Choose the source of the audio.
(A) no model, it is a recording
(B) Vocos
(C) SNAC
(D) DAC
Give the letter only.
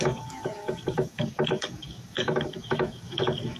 D